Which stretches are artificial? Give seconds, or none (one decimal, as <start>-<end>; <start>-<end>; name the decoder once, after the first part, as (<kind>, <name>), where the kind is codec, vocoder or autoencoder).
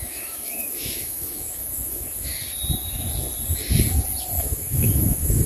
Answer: 0.0-2.3 (autoencoder, DAC-VAE); 4.4-5.5